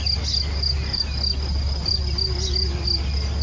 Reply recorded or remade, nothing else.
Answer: recorded